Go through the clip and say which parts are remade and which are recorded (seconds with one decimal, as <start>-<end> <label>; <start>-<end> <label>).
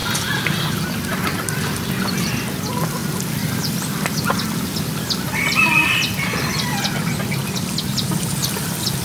0.0-9.0 recorded